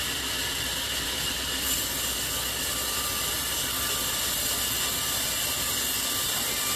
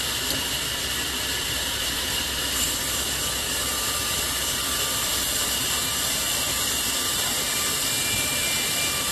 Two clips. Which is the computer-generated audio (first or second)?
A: second